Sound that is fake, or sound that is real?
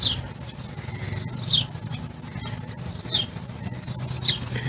real